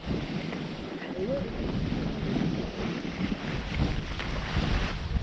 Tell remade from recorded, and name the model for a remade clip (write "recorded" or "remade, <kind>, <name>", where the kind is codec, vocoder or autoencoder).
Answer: recorded